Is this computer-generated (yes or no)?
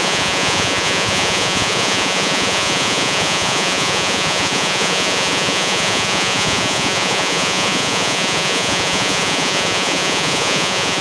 yes